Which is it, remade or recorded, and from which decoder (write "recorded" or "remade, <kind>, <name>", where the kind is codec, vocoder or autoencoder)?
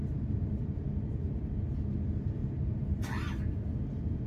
recorded